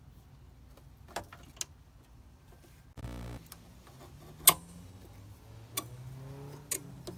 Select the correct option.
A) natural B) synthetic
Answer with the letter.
A